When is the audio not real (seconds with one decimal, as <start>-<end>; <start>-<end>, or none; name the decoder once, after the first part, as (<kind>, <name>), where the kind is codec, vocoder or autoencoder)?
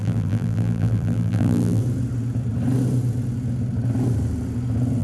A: 0.0-1.8 (vocoder, BigVGAN v2)